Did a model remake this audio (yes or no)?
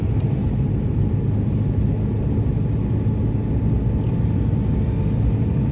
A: no